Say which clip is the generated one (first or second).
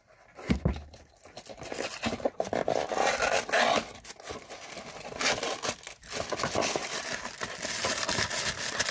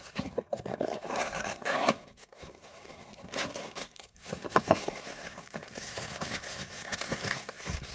second